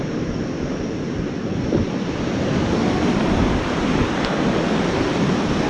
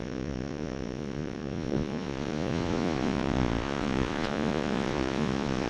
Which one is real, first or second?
first